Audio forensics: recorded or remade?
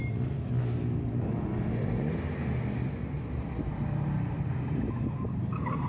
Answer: recorded